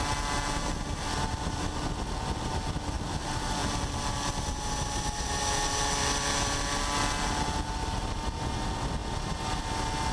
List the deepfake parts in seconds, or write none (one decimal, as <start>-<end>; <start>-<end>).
none